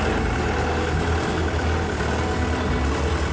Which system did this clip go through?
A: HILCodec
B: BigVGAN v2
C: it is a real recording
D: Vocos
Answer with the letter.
C